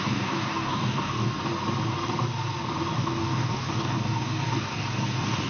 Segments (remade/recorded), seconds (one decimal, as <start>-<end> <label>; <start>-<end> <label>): 0.0-1.5 remade; 1.5-3.0 recorded; 3.0-5.5 remade